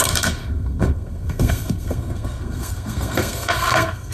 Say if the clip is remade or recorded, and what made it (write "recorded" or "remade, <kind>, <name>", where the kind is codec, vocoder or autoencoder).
remade, codec, SNAC